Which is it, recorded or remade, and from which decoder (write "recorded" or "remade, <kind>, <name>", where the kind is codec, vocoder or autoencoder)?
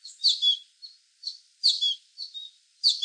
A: recorded